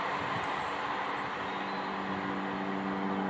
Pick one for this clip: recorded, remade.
recorded